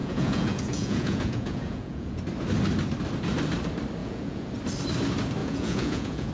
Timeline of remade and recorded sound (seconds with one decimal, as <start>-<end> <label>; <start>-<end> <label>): 0.0-2.2 remade; 2.2-4.0 recorded; 4.0-4.5 remade; 4.5-5.4 recorded; 5.4-6.3 remade